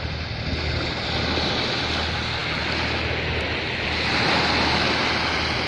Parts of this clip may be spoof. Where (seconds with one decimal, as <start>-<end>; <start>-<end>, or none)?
none